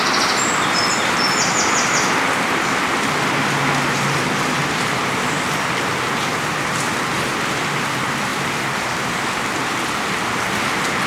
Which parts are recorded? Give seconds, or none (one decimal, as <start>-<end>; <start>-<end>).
0.0-11.1